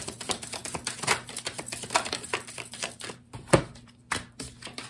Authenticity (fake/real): fake